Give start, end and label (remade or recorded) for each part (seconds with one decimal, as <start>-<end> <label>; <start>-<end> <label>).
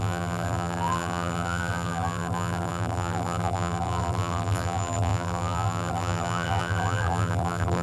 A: 0.0-7.8 remade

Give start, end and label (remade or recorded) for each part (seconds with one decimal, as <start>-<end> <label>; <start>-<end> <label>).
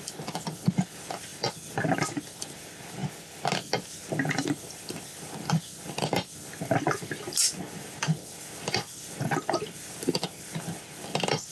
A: 0.0-3.0 remade; 3.0-4.1 recorded; 4.1-11.5 remade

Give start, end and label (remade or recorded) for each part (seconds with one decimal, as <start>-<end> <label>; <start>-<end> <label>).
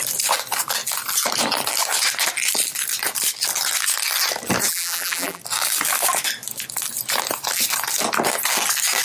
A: 0.0-4.7 recorded; 4.7-5.4 remade; 5.4-9.0 recorded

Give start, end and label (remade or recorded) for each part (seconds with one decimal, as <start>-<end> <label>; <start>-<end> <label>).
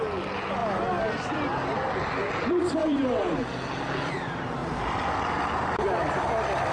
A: 0.0-2.8 recorded; 2.8-3.8 remade; 3.8-4.6 recorded; 4.6-5.9 remade; 5.9-6.7 recorded